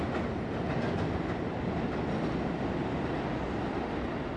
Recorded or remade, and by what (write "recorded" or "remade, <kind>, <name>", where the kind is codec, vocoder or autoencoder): recorded